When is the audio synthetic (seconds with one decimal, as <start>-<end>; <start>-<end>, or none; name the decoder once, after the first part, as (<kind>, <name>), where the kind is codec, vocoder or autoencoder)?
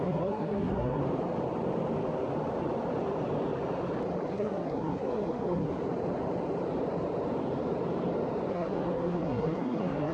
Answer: 0.0-1.0 (codec, SNAC); 4.3-5.7; 8.5-10.1